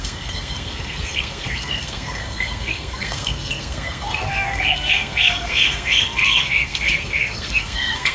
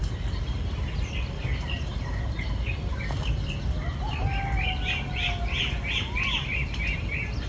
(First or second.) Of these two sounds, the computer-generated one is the first